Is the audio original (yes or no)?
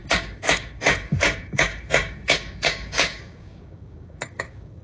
no